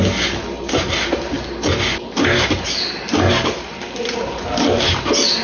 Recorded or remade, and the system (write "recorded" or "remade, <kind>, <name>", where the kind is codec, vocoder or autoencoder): recorded